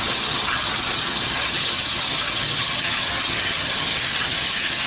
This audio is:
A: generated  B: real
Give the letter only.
A